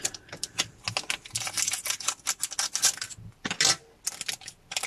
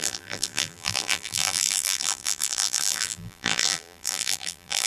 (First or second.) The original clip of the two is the first